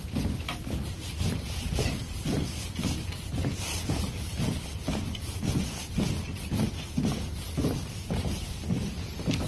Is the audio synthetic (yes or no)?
no